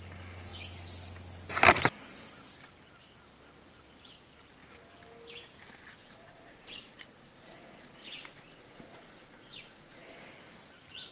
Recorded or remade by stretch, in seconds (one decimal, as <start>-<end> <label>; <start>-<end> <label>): 0.0-6.0 recorded; 6.0-10.3 remade; 10.3-11.1 recorded